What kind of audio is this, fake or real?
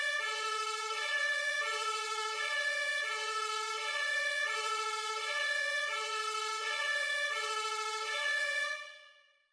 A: fake